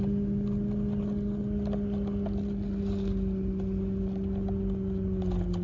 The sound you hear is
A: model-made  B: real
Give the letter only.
B